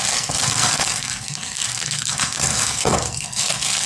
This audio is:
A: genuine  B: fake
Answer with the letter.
B